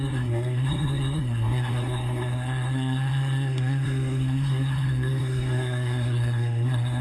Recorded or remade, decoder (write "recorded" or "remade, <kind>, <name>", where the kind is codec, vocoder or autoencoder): remade, codec, SNAC